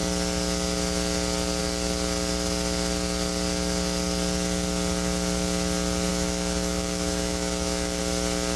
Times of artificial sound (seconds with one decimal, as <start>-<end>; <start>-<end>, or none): 6.1-8.0